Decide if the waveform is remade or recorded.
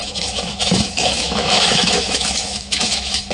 remade